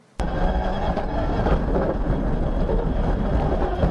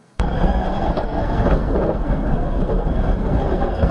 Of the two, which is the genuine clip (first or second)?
first